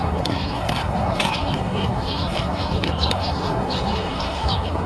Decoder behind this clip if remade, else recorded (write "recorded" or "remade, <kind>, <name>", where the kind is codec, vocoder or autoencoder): remade, codec, SNAC